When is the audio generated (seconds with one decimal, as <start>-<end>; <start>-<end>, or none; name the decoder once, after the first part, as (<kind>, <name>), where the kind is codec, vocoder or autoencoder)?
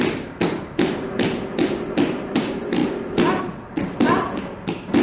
none